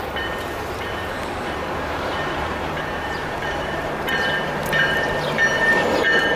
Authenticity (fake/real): fake